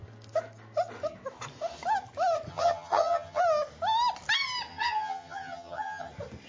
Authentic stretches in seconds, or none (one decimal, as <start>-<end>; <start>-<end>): 0.0-2.5; 3.4-4.7; 6.1-6.5